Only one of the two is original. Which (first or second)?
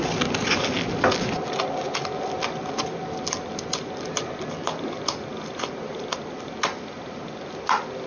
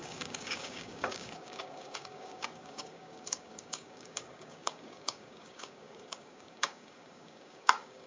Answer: first